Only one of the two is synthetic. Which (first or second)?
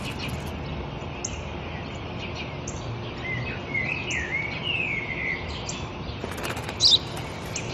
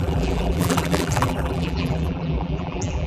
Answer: second